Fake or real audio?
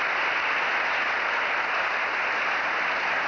real